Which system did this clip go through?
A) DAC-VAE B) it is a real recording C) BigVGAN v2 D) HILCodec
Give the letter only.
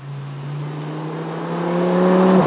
B